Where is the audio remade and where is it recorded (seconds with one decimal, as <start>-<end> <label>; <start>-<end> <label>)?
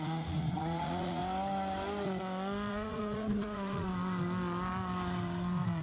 0.0-1.2 remade; 1.2-2.7 recorded; 2.7-3.9 remade; 3.9-5.8 recorded